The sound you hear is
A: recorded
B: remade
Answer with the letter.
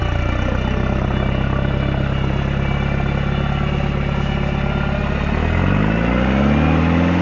A